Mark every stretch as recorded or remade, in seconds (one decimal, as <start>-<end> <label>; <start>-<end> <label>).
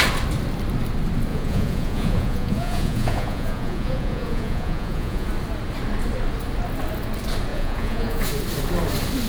0.0-1.3 recorded; 1.3-5.3 remade; 5.3-7.5 recorded; 7.5-8.3 remade; 8.3-9.3 recorded